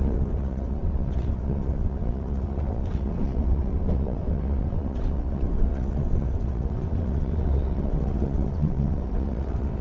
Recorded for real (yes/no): no